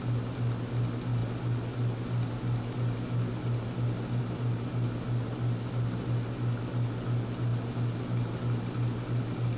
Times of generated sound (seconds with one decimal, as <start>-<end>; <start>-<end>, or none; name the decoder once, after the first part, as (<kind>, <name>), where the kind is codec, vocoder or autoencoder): none